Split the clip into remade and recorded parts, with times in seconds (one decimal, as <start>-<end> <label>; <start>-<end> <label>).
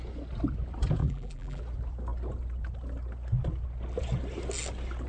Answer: 0.0-1.0 recorded; 1.0-1.6 remade; 1.6-5.1 recorded